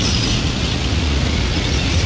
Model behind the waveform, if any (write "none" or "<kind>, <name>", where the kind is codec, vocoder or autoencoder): vocoder, Vocos